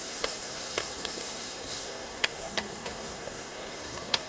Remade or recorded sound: remade